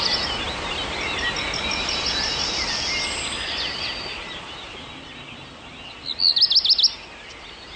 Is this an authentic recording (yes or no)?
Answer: yes